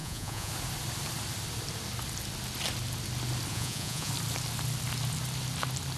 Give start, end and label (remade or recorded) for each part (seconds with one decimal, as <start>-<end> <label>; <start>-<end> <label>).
0.0-0.5 remade; 0.5-3.5 recorded; 3.5-4.1 remade; 4.1-6.0 recorded